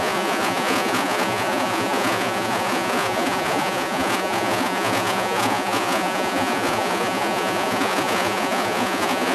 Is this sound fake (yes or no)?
yes